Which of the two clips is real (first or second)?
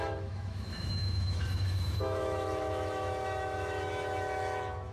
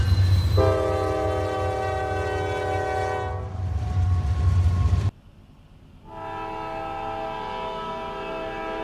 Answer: second